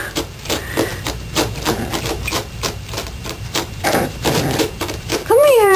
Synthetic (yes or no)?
yes